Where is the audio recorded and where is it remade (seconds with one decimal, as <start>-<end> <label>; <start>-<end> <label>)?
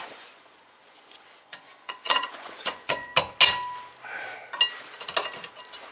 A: 0.0-3.1 remade; 3.1-5.9 recorded